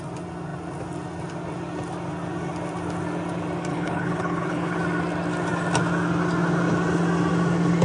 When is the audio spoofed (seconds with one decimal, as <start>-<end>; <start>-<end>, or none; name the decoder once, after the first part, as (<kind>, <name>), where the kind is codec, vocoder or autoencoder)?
3.7-4.8 (codec, HILCodec)